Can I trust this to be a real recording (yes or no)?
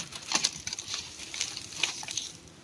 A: no